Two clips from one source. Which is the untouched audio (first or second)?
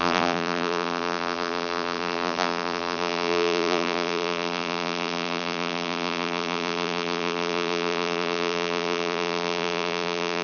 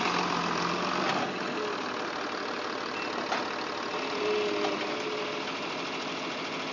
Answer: second